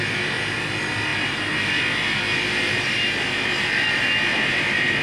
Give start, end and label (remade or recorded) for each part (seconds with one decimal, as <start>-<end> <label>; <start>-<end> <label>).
0.0-1.1 recorded; 1.1-4.1 remade; 4.1-5.0 recorded